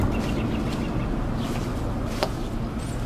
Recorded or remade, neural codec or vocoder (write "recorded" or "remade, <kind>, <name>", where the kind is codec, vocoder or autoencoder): recorded